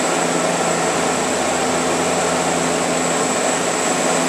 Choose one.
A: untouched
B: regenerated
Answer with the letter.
A